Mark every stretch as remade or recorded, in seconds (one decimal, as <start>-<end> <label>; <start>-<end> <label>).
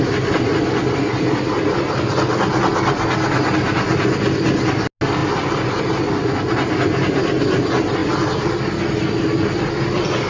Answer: 0.0-1.4 remade; 1.4-5.2 recorded; 5.2-5.8 remade; 5.8-8.0 recorded; 8.0-9.2 remade; 9.2-10.3 recorded